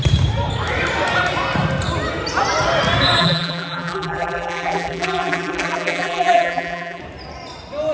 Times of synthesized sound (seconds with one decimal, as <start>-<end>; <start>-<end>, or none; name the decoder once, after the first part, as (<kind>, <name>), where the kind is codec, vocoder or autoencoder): 3.2-7.0 (vocoder, BigVGAN v2)

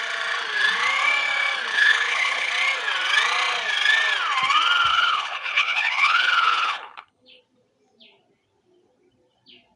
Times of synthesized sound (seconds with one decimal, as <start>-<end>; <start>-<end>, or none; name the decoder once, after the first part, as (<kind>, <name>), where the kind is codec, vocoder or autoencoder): 1.7-2.5 (codec, HILCodec); 4.9-7.4

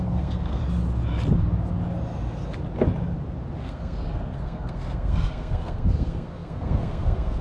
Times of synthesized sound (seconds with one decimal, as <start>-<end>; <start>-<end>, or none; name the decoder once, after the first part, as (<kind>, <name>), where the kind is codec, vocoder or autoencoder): 0.0-0.6 (codec, SNAC); 3.6-7.4

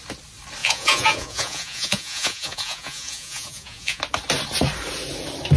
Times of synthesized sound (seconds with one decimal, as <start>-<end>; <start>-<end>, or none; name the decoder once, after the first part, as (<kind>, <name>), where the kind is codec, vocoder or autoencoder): 0.6-4.0 (vocoder, Vocos)

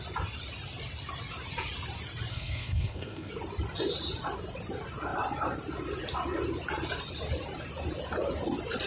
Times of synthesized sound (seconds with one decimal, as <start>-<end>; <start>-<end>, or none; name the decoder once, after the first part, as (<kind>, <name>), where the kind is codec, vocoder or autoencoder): 2.3-3.3 (codec, SNAC)

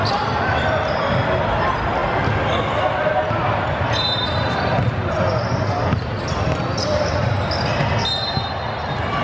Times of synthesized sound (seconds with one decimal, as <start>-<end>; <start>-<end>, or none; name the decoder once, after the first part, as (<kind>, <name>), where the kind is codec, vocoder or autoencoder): none

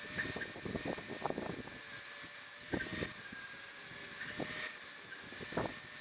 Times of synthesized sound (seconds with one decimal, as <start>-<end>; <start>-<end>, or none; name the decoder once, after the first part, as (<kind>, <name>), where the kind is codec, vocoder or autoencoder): none

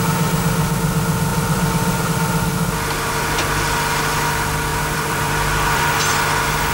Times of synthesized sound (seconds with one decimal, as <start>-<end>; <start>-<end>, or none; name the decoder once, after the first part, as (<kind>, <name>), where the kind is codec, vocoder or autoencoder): 1.3-2.0 (vocoder, BigVGAN v2); 4.7-6.1